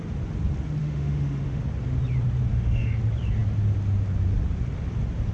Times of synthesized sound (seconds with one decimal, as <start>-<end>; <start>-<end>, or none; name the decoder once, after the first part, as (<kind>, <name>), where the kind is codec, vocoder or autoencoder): 0.8-1.6 (autoencoder, DAC-VAE); 2.5-3.0